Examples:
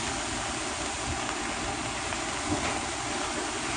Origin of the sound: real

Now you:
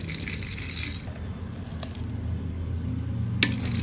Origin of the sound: real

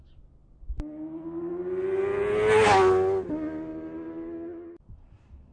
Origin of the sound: real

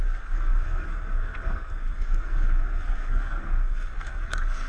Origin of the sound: fake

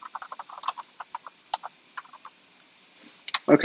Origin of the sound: real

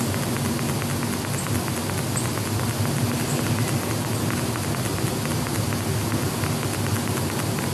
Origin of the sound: real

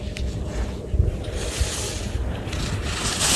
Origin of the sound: real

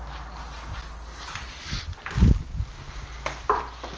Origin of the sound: real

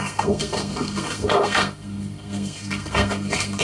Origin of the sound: fake